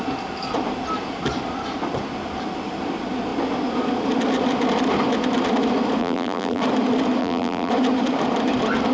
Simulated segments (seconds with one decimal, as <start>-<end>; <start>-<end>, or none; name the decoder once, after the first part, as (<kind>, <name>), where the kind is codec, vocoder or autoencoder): 6.0-6.6 (vocoder, BigVGAN v2); 7.2-7.7